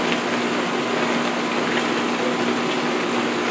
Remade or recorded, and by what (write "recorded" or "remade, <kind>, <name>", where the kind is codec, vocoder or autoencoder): recorded